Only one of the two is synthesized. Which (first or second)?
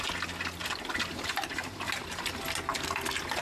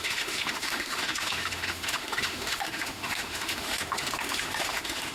second